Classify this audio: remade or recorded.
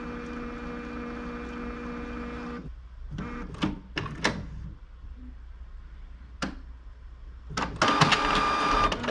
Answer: recorded